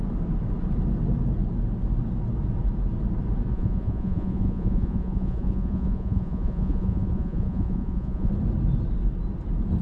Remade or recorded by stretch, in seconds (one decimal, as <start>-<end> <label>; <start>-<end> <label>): 0.0-3.5 recorded; 3.5-8.3 remade; 8.3-9.8 recorded